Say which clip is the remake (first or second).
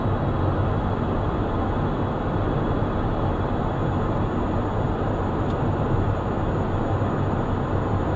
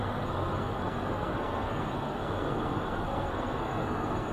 second